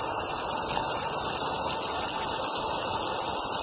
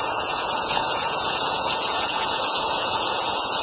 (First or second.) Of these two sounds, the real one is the first